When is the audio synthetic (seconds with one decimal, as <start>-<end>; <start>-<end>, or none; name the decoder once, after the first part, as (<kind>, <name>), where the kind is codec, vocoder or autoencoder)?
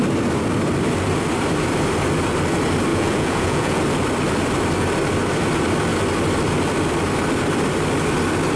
2.9-3.8 (vocoder, Vocos)